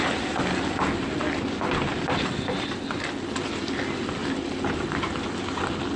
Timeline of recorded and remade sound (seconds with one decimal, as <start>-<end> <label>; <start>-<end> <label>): 0.0-6.0 recorded